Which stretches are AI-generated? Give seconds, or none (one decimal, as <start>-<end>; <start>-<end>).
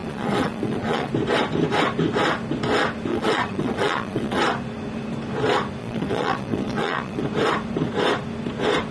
0.0-1.1; 3.1-4.4; 5.8-7.2